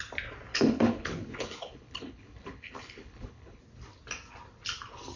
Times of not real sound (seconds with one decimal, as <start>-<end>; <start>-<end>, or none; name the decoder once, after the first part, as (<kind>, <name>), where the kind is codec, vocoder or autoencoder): 0.5-3.6 (codec, HILCodec)